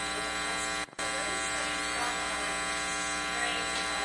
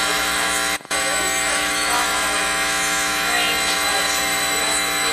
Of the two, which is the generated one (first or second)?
second